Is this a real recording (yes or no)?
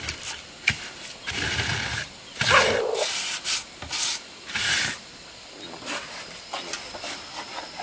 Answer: yes